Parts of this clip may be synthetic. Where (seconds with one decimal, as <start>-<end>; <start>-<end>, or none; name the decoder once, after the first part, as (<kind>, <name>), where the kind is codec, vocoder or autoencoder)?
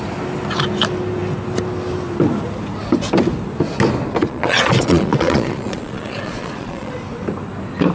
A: 4.2-6.9 (vocoder, Vocos)